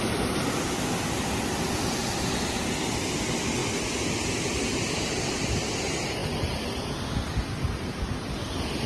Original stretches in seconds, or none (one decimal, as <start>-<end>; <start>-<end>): 0.0-8.9